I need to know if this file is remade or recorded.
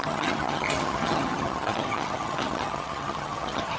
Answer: remade